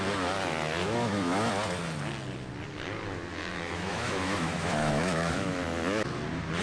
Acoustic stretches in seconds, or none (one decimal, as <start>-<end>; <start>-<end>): 0.0-0.8; 1.5-3.3; 5.6-6.6